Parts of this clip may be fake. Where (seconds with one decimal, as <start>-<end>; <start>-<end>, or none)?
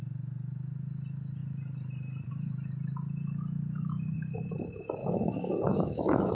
5.0-6.3